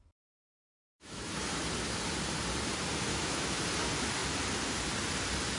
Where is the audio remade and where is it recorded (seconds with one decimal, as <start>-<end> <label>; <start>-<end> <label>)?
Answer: 0.0-0.4 recorded; 0.4-1.2 remade; 1.2-3.1 recorded; 3.1-3.6 remade; 3.6-5.6 recorded